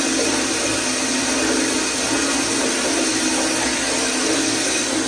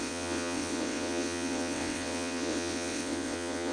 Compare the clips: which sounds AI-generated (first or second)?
second